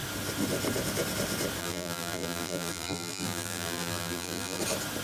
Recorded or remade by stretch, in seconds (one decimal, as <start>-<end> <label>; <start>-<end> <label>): 0.0-1.6 recorded; 1.6-4.6 remade; 4.6-5.0 recorded